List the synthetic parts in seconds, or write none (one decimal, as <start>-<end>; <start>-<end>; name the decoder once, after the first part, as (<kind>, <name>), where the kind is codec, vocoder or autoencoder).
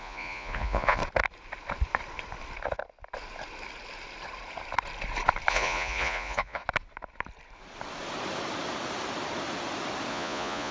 0.0-1.0 (vocoder, Vocos); 5.5-6.6; 10.1-10.7